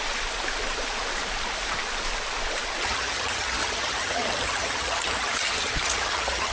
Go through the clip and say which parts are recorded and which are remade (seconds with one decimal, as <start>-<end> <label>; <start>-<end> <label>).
0.0-2.8 recorded; 2.8-6.5 remade